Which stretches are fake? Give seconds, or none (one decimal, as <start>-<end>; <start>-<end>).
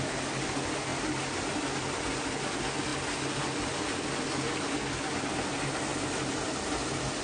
none